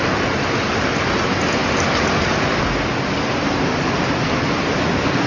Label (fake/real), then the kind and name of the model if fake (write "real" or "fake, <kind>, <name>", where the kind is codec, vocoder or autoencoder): real